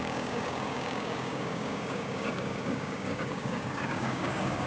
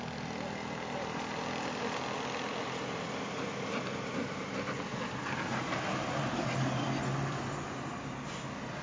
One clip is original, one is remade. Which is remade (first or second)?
first